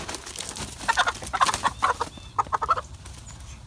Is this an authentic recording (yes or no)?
yes